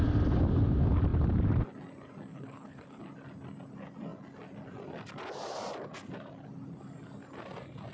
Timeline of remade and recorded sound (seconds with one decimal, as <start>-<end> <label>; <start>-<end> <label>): 0.0-2.3 recorded; 2.3-3.0 remade; 3.0-7.9 recorded